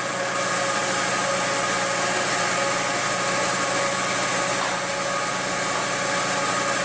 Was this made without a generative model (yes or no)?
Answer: yes